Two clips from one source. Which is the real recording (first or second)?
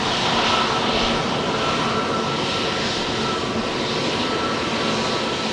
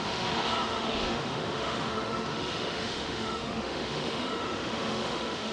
first